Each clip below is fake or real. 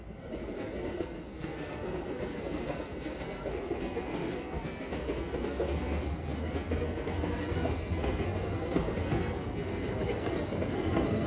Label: fake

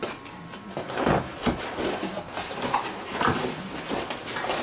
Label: real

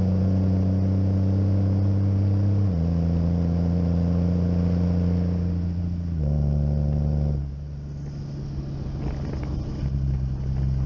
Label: real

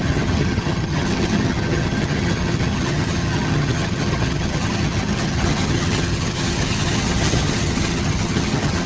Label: fake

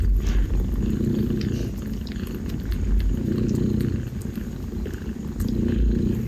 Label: real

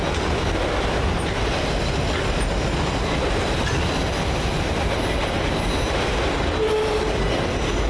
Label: real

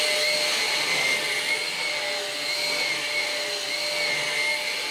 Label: real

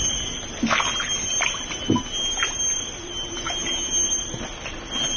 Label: real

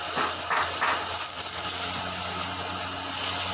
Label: real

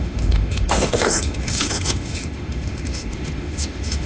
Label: fake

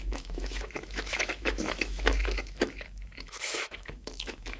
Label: fake